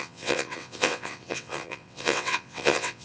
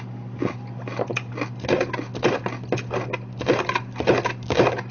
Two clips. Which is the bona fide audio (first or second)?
second